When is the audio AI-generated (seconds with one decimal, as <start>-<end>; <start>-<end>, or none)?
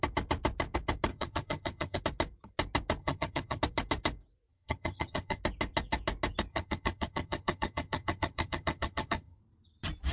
1.1-2.0; 3.0-3.6; 4.5-5.4; 6.5-9.4